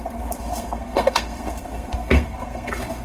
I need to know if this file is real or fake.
fake